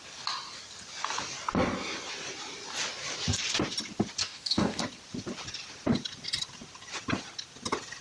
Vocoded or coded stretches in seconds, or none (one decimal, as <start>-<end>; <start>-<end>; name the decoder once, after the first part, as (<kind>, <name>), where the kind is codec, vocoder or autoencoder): 4.2-4.8 (codec, DAC)